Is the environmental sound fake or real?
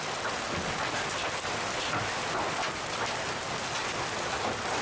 real